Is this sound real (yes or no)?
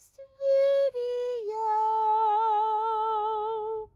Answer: no